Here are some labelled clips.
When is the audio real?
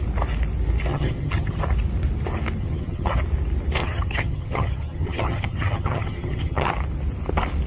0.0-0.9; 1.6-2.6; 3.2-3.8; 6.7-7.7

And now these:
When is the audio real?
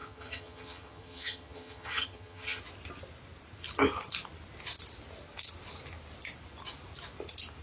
2.6-7.6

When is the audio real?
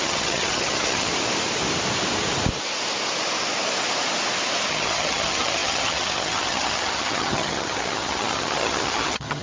1.1-4.7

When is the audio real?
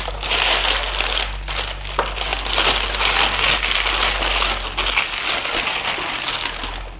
0.0-7.0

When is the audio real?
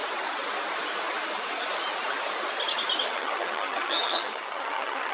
0.0-3.1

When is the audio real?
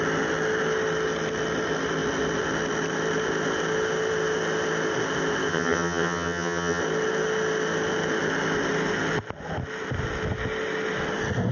0.0-5.5; 6.8-11.5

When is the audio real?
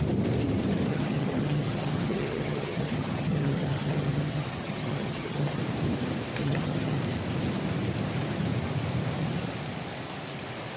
0.0-0.9; 5.6-6.4; 7.0-10.8